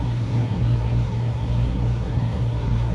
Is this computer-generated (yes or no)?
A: yes